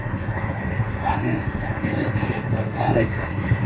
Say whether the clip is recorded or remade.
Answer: remade